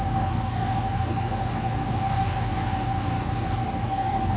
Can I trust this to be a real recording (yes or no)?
no